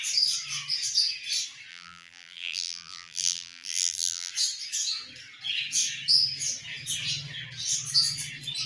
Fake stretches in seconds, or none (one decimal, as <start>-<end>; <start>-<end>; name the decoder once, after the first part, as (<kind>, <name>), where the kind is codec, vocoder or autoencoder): 1.7-4.3 (vocoder, BigVGAN v2)